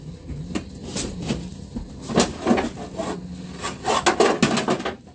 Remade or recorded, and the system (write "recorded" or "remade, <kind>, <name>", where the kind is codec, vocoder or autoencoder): recorded